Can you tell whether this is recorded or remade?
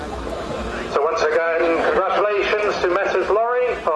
recorded